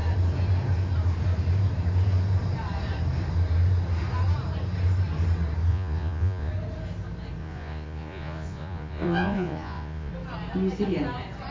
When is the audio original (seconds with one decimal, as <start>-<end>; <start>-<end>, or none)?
0.0-5.7; 6.5-7.4; 10.1-11.5